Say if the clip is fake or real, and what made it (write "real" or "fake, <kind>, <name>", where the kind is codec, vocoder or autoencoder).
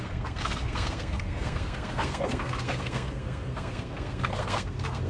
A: fake, codec, SNAC